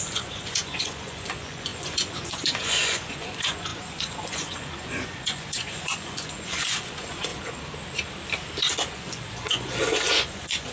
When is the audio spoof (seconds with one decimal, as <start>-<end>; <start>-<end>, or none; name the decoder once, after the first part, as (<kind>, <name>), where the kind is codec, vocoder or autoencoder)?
0.0-7.3 (vocoder, Vocos); 8.9-10.7